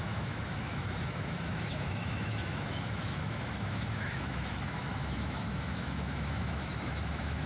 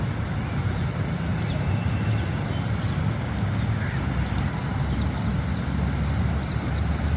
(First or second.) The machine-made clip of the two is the first